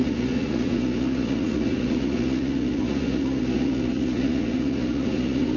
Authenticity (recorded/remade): remade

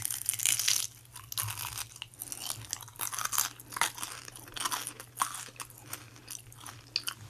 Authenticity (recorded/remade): recorded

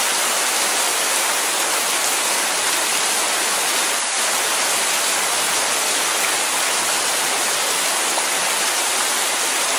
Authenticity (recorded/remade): recorded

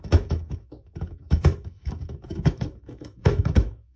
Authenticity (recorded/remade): remade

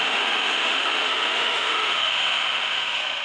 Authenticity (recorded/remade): remade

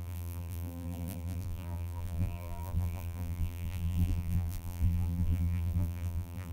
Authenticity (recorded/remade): remade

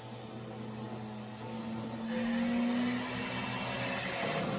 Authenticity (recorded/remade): recorded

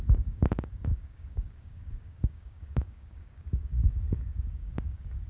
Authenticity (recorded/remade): remade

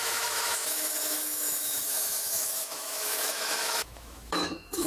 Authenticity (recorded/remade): remade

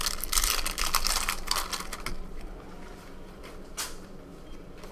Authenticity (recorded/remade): recorded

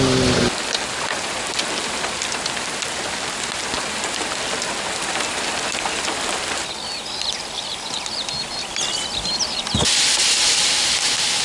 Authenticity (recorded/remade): recorded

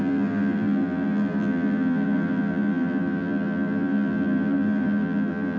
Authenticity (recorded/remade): remade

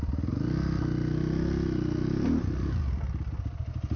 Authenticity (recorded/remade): recorded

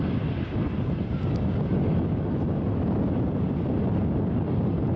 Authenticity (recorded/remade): recorded